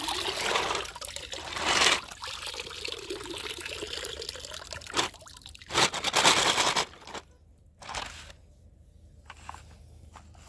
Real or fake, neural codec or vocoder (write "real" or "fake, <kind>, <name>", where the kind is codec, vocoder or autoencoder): real